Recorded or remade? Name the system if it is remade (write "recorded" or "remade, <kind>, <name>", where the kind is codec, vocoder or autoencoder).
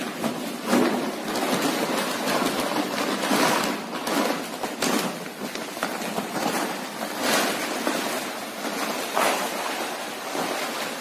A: recorded